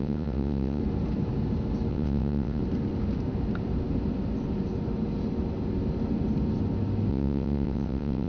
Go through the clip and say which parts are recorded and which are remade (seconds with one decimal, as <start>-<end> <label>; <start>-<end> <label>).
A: 0.0-0.8 remade; 0.8-1.9 recorded; 1.9-2.6 remade; 2.6-7.1 recorded; 7.1-8.3 remade